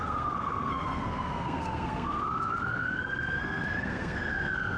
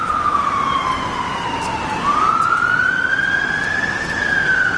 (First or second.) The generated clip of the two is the first